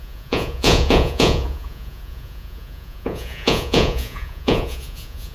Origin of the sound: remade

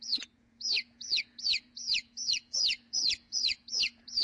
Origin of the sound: remade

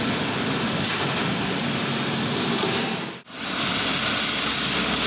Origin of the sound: recorded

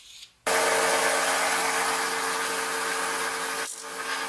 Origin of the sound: recorded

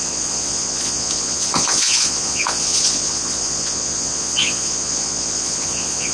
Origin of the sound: remade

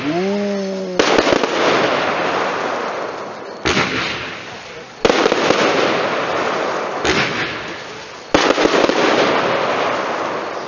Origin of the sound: recorded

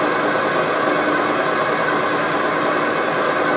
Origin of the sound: recorded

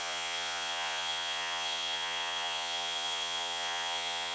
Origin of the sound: remade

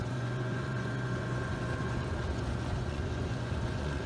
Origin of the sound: remade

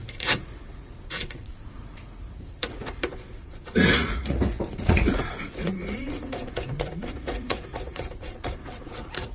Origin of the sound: remade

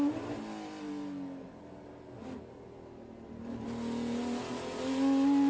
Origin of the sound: recorded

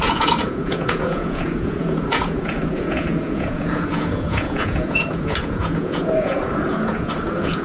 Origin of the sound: remade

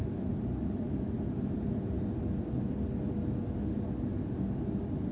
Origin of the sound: recorded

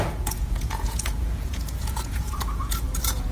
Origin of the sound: remade